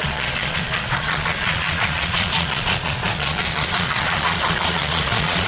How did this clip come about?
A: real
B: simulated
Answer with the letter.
B